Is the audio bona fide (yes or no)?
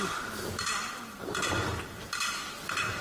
yes